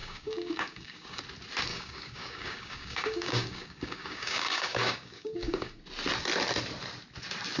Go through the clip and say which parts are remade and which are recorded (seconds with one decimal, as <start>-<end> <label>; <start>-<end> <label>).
0.0-1.2 remade; 1.2-1.7 recorded; 1.7-5.8 remade; 5.8-7.6 recorded

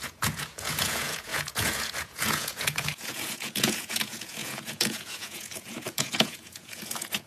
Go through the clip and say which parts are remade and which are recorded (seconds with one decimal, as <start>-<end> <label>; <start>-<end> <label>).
0.0-7.3 remade

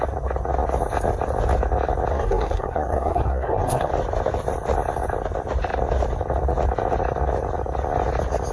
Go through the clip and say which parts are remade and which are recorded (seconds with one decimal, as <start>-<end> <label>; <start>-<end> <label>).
0.0-2.1 recorded; 2.1-3.9 remade; 3.9-8.5 recorded

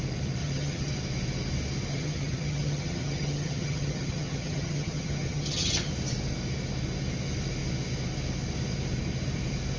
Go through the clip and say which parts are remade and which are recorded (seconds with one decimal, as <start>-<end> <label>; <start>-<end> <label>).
0.0-0.4 recorded; 0.4-0.9 remade; 0.9-1.9 recorded; 1.9-5.9 remade; 5.9-9.8 recorded

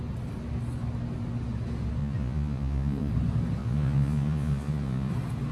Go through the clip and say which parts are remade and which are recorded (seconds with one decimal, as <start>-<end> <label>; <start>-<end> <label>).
0.0-2.0 recorded; 2.0-3.1 remade; 3.1-3.6 recorded; 3.6-5.1 remade; 5.1-5.5 recorded

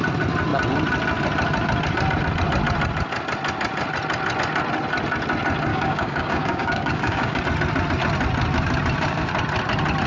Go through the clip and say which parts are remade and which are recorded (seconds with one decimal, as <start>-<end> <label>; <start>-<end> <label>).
0.0-5.7 recorded; 5.7-7.4 remade; 7.4-10.1 recorded

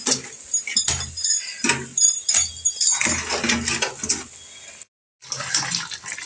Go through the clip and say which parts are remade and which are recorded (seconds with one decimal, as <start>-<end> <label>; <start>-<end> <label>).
0.0-6.3 recorded

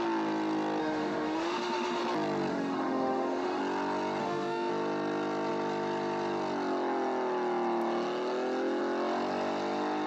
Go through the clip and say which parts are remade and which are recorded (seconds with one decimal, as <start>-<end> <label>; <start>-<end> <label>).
0.0-0.8 recorded; 0.8-2.0 remade; 2.0-2.5 recorded; 2.5-3.6 remade; 3.6-4.2 recorded; 4.2-4.7 remade; 4.7-10.1 recorded